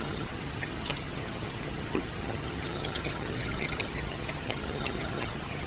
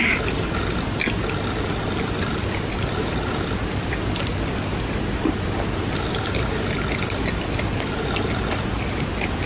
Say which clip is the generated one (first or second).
first